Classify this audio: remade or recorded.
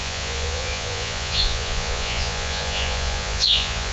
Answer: remade